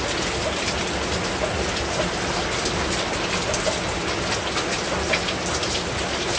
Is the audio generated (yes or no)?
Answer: no